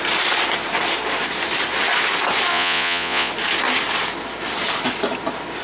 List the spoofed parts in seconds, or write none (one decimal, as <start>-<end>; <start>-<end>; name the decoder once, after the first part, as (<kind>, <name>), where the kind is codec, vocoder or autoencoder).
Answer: 2.5-3.3 (vocoder, Vocos)

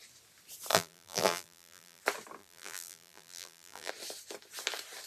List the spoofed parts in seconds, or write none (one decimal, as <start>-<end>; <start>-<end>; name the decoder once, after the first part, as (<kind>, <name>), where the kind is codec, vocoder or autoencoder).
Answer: 0.7-2.0 (vocoder, BigVGAN v2); 2.4-3.9

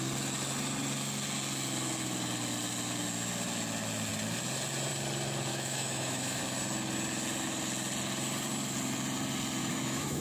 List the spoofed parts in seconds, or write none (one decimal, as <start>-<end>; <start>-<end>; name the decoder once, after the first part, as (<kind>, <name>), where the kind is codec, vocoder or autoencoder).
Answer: 5.5-6.4 (autoencoder, DAC-VAE); 9.6-10.2

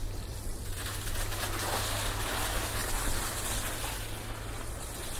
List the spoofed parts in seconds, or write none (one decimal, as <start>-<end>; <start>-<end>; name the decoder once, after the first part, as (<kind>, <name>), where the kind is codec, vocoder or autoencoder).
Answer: 0.0-1.1 (vocoder, BigVGAN v2); 2.8-3.4

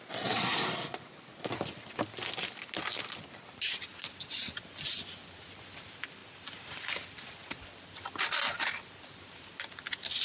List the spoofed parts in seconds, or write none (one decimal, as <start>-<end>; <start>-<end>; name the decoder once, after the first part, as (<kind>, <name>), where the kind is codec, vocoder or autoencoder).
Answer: none

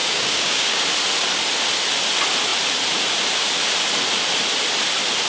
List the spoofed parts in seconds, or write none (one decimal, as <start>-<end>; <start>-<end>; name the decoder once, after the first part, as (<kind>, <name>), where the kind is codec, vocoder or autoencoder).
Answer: 0.0-0.8 (codec, DAC)